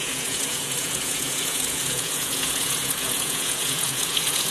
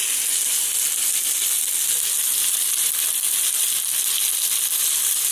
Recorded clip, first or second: second